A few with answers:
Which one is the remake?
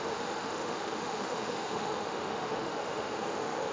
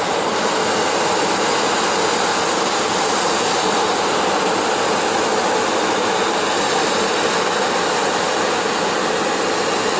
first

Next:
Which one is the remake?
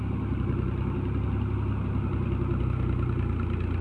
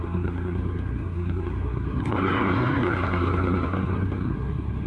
second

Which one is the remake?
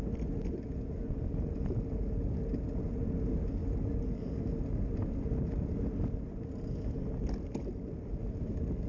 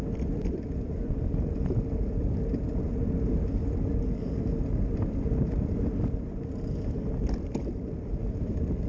second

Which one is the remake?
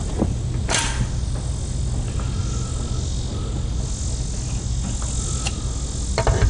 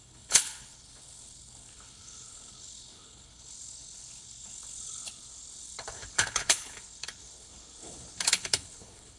second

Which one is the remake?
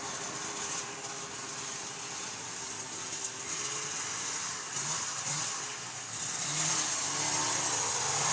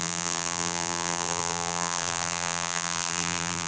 second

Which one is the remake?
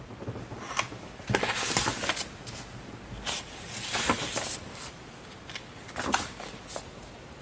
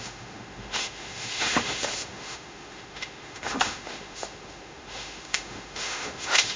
second